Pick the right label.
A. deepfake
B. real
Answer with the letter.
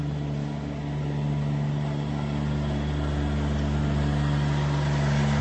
B